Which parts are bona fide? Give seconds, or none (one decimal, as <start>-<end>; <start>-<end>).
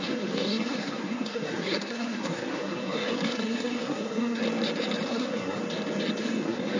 4.4-5.1; 5.6-6.2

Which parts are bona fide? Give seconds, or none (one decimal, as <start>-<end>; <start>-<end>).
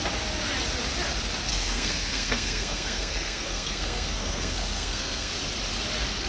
0.0-1.5; 5.3-6.3